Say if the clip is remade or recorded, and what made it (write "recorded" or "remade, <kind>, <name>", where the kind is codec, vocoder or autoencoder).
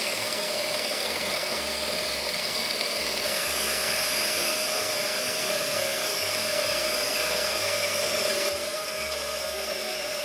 remade, codec, SNAC